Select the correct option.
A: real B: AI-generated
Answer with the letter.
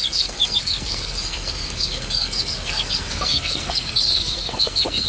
B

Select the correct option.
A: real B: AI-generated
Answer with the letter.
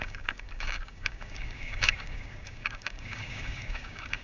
B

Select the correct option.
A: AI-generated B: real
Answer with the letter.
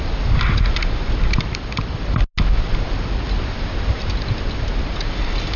B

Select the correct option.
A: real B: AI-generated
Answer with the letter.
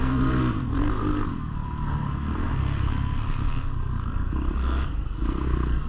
B